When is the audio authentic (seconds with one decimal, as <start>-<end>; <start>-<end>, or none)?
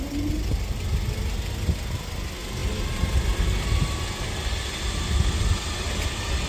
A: 0.0-6.5